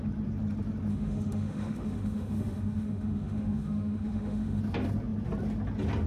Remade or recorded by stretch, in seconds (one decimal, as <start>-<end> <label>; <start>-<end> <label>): 0.0-0.9 recorded; 0.9-4.6 remade; 4.6-6.1 recorded